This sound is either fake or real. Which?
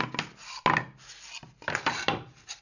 real